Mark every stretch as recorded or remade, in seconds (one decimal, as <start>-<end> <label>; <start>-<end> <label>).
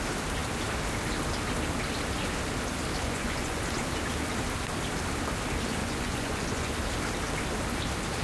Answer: 0.0-3.0 recorded; 3.0-3.6 remade; 3.6-5.8 recorded; 5.8-6.7 remade; 6.7-8.2 recorded